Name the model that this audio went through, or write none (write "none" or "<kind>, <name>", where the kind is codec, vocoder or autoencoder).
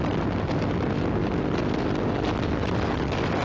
none